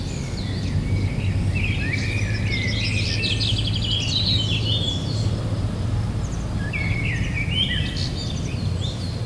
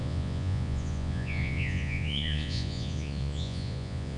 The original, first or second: first